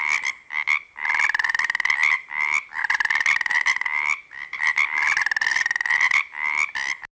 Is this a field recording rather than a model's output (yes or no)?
yes